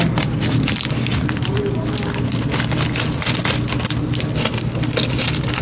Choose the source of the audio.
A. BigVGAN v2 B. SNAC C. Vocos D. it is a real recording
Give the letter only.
D